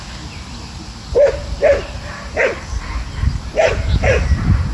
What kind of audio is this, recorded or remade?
recorded